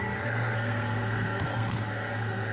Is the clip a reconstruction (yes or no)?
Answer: yes